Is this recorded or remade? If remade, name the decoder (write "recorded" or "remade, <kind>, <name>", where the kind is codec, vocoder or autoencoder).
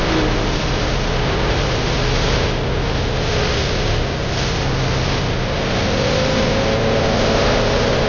recorded